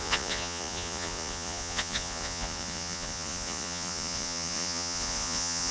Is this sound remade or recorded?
remade